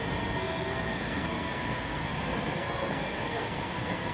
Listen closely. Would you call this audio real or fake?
fake